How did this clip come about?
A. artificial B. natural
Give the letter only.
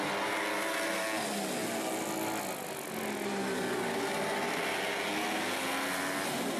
B